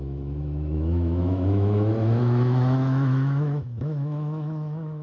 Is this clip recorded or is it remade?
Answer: remade